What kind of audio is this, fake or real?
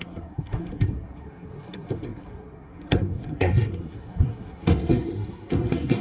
fake